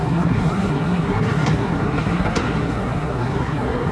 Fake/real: fake